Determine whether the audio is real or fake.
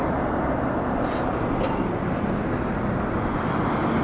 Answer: real